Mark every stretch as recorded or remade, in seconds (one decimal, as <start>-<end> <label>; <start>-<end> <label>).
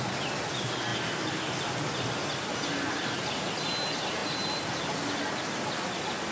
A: 0.0-0.9 recorded; 0.9-3.3 remade; 3.3-6.3 recorded